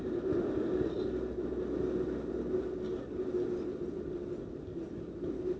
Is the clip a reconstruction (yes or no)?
no